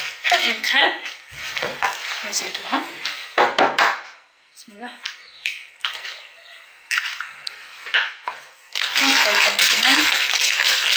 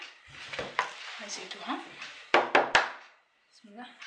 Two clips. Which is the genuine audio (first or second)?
second